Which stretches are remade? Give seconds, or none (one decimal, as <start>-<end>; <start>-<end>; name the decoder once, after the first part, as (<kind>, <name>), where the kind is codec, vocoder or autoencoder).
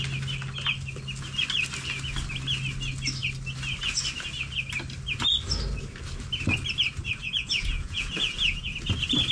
7.2-8.7 (vocoder, Vocos)